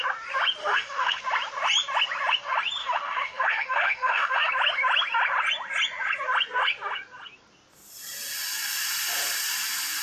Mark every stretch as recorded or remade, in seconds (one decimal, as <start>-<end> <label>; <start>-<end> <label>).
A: 0.0-0.6 recorded; 0.6-1.2 remade; 1.2-2.8 recorded; 2.8-4.5 remade; 4.5-10.0 recorded